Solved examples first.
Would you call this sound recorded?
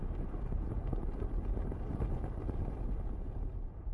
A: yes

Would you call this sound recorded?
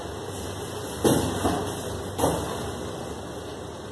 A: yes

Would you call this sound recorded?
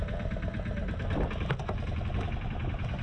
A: yes